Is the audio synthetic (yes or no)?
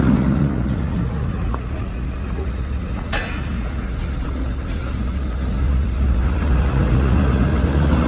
yes